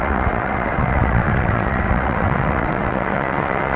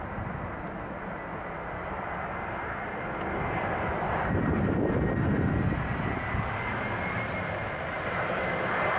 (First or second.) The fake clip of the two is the first